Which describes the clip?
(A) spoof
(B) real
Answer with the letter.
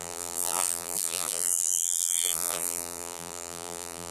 A